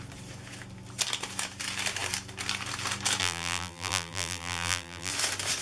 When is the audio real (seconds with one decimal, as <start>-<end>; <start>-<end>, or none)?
0.0-3.2; 5.1-5.6